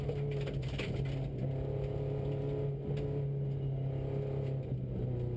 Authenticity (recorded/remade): recorded